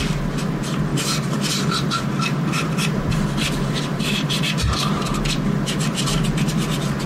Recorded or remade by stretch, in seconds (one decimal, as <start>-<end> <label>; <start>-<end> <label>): 0.0-0.9 recorded; 0.9-5.2 remade; 5.2-7.1 recorded